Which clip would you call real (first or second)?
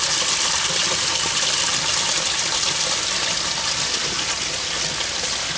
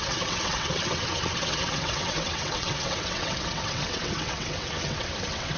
first